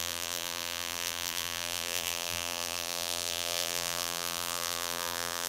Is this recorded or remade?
remade